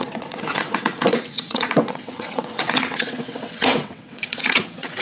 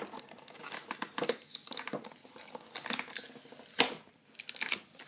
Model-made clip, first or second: first